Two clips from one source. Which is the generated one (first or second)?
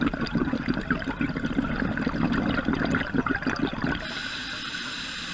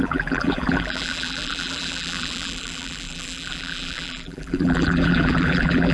second